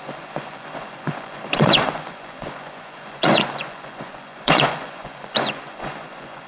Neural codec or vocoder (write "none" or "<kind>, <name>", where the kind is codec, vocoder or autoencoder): vocoder, Vocos